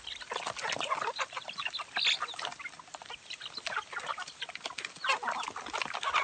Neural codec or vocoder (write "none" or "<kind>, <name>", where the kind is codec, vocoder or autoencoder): none